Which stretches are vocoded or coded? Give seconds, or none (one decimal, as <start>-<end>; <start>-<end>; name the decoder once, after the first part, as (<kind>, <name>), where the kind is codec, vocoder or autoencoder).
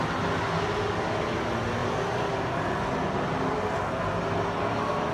none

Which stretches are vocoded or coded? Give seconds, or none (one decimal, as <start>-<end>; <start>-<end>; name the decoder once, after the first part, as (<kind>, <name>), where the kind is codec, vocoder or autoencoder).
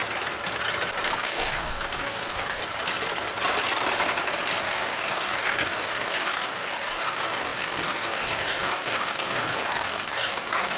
1.2-2.6 (codec, DAC); 4.6-10.8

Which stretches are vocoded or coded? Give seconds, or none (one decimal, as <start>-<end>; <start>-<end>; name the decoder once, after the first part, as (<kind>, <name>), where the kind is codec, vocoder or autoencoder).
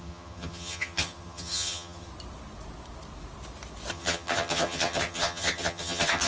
0.0-2.1 (vocoder, HiFi-GAN); 3.9-6.3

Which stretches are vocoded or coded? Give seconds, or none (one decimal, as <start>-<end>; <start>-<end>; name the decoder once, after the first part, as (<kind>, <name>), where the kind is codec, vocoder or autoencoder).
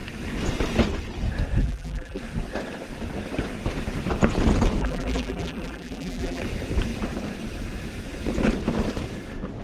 1.6-2.2 (vocoder, BigVGAN v2); 4.8-6.4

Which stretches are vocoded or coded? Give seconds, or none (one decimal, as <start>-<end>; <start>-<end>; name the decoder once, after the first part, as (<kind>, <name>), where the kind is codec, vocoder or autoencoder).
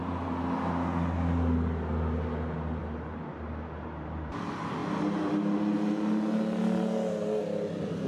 2.8-4.3 (vocoder, BigVGAN v2)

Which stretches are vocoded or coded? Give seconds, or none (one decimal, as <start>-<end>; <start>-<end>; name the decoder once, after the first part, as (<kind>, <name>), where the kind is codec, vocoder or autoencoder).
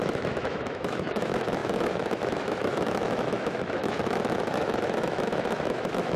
0.0-6.2 (autoencoder, DAC-VAE)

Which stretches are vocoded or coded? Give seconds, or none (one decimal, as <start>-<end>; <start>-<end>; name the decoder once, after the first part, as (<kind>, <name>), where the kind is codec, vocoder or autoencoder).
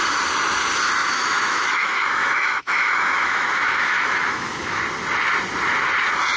1.0-4.8 (autoencoder, DAC-VAE)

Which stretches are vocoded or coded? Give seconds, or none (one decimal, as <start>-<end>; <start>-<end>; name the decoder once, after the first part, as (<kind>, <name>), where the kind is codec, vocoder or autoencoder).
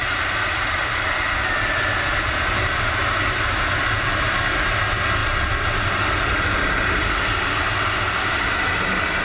none